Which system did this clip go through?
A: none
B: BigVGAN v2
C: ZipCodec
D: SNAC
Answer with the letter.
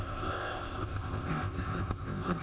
C